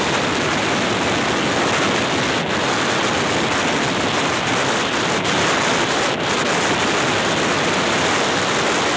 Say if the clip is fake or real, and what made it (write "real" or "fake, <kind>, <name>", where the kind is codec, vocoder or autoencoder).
real